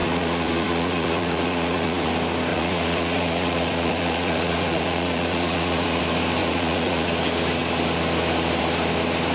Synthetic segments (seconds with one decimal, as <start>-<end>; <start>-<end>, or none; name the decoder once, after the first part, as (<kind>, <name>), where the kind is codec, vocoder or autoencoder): 0.0-2.1 (vocoder, Vocos); 2.5-6.0; 6.4-7.1